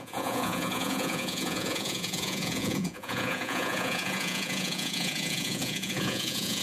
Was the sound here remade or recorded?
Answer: remade